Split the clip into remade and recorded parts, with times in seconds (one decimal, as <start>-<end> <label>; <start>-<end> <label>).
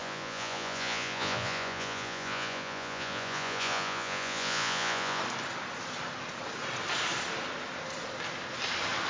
0.0-5.2 remade; 5.2-9.1 recorded